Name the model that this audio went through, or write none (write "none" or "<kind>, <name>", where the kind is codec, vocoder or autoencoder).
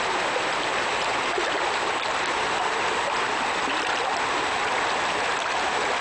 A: none